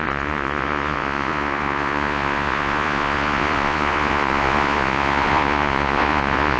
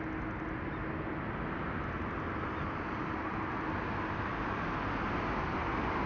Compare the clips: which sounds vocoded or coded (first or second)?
first